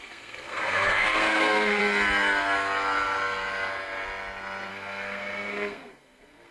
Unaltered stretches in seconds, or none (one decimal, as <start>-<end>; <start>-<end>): 1.8-4.7